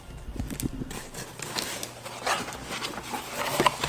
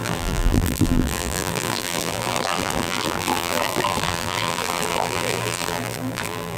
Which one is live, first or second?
first